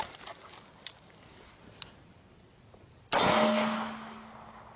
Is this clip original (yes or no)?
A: yes